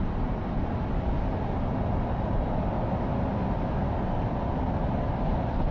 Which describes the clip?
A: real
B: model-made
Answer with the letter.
A